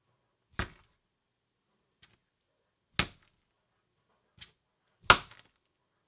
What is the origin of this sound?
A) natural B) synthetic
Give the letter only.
A